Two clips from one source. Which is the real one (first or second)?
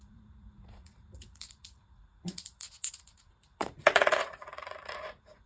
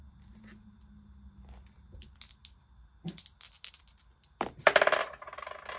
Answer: second